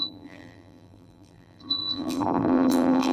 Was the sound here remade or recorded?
remade